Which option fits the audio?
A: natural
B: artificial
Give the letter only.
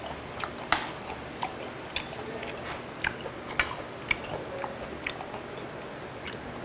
A